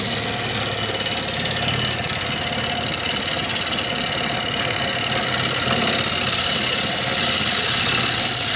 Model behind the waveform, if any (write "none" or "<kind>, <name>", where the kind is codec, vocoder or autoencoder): none